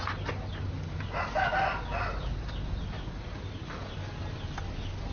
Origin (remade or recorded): recorded